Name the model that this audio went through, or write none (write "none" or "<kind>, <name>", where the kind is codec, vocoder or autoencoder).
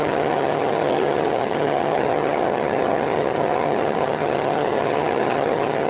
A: vocoder, HiFi-GAN